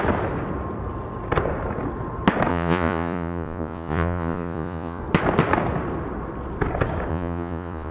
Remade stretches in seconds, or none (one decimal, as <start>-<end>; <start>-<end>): 2.5-5.0; 7.1-7.9